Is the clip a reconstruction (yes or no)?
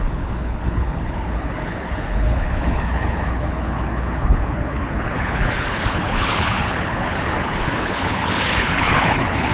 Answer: yes